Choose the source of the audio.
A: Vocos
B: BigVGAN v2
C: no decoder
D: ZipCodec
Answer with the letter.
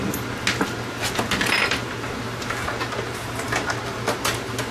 C